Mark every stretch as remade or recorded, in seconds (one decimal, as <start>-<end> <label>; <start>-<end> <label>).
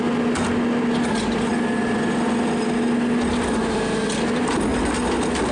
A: 0.0-5.5 recorded